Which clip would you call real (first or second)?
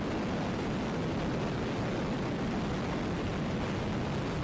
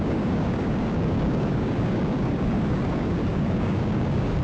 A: first